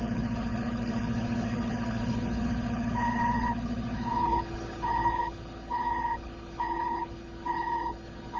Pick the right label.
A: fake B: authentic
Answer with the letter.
A